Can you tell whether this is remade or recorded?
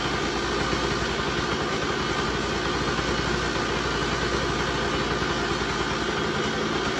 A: recorded